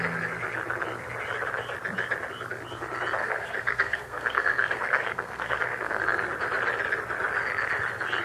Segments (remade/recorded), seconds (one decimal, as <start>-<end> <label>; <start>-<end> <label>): 0.0-3.2 recorded; 3.2-6.0 remade; 6.0-8.2 recorded